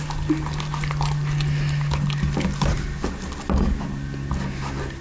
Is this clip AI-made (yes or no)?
no